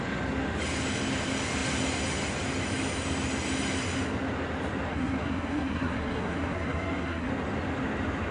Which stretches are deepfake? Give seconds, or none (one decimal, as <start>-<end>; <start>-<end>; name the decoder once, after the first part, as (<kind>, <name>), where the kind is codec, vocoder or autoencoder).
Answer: 4.9-7.3 (codec, SNAC)